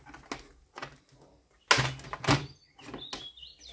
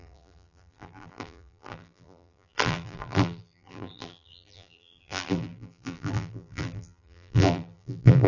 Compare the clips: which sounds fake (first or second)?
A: second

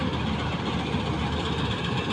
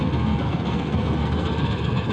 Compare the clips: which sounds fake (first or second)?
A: second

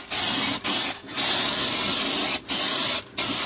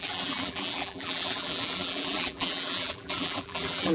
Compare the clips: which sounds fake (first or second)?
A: second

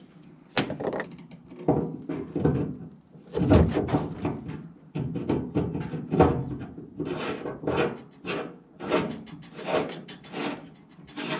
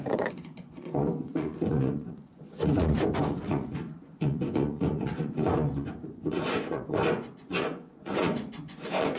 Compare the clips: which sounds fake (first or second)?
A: second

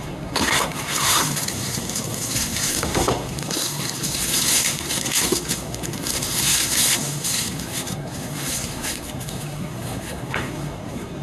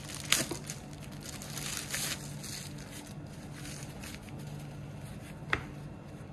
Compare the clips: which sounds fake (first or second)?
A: first